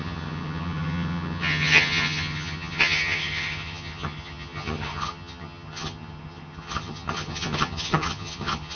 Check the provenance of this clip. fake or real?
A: fake